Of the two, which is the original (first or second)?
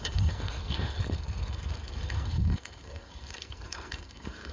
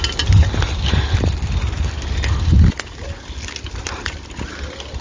second